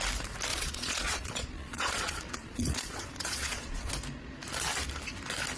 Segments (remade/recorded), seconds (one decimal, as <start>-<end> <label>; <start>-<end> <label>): 0.0-0.5 recorded; 0.5-3.9 remade; 3.9-5.6 recorded